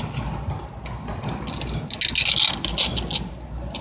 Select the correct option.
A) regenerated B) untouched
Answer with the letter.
B